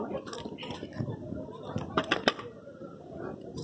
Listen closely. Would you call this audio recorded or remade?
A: recorded